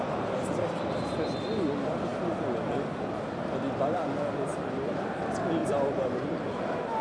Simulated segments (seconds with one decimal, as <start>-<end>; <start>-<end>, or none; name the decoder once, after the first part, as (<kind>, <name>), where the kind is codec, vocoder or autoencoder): 4.5-5.1 (vocoder, BigVGAN v2); 5.6-6.6